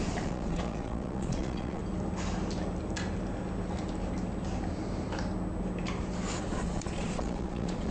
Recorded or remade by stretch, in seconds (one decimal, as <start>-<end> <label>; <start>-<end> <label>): 0.0-1.8 remade; 1.8-6.5 recorded; 6.5-7.9 remade